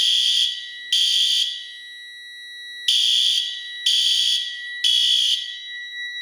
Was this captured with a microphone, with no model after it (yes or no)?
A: yes